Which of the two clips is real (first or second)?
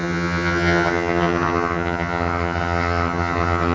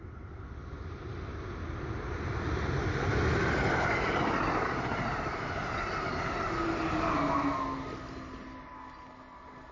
second